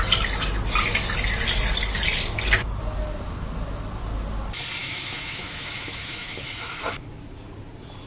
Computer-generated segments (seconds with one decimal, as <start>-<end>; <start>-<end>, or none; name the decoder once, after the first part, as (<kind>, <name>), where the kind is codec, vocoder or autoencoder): 4.8-6.7 (autoencoder, DAC-VAE)